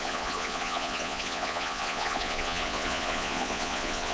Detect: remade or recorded remade